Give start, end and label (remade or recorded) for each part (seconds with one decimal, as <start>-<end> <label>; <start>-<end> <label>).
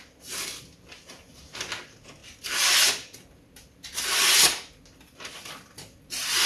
0.0-6.5 recorded